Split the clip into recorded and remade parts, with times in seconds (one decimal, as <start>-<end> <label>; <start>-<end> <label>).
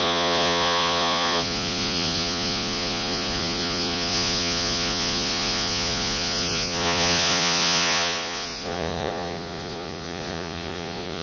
0.0-11.2 remade